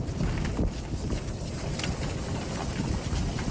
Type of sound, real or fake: real